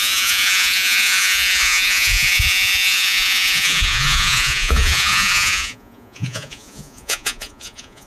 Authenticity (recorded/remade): remade